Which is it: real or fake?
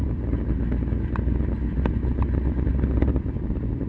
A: real